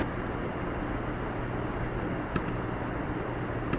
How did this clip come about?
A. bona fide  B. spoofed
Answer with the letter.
A